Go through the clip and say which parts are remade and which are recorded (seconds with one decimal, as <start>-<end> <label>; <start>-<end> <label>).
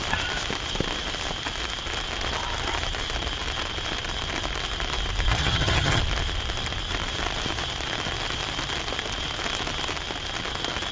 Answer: 0.0-5.3 recorded; 5.3-6.0 remade; 6.0-10.9 recorded